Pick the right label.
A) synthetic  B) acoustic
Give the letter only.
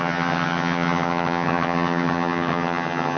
A